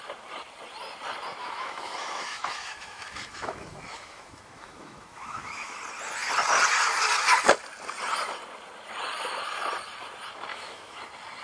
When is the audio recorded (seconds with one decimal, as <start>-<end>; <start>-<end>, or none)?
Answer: 0.0-1.4; 5.8-10.5; 11.0-11.4